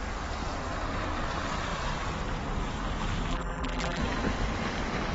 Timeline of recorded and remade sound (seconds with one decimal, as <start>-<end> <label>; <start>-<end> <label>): 0.0-3.3 recorded; 3.3-4.0 remade; 4.0-5.1 recorded